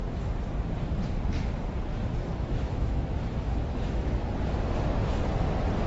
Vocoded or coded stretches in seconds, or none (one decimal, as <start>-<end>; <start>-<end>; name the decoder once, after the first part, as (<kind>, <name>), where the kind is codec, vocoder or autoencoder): 2.3-4.3 (autoencoder, DAC-VAE)